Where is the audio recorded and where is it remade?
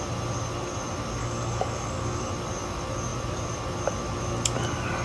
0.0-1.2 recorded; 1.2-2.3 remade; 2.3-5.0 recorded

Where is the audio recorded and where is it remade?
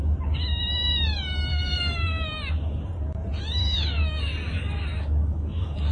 0.0-1.5 recorded; 1.5-2.3 remade; 2.3-3.6 recorded; 3.6-5.9 remade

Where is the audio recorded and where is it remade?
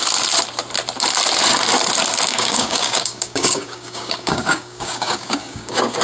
0.0-2.3 recorded; 2.3-6.0 remade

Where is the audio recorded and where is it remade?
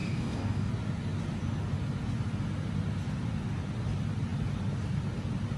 0.0-0.7 remade; 0.7-5.6 recorded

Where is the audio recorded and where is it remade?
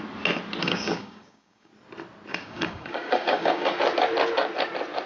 0.0-0.6 recorded; 0.6-1.7 remade; 1.7-2.3 recorded; 2.3-3.8 remade; 3.8-5.1 recorded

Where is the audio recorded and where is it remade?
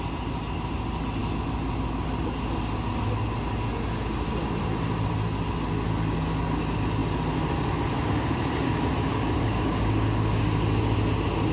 0.0-9.1 recorded; 9.1-10.4 remade; 10.4-11.5 recorded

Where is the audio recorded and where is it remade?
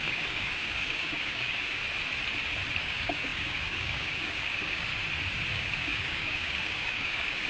0.0-1.8 remade; 1.8-2.8 recorded; 2.8-4.9 remade; 4.9-5.5 recorded; 5.5-7.5 remade